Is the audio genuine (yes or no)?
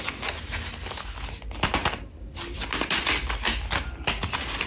yes